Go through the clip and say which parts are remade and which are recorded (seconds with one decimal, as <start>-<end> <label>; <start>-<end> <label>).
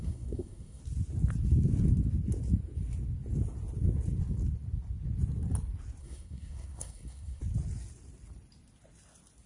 0.0-0.8 remade; 0.8-6.0 recorded; 6.0-7.4 remade; 7.4-9.5 recorded